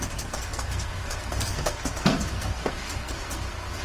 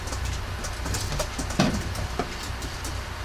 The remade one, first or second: first